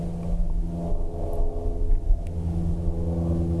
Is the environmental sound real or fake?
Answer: real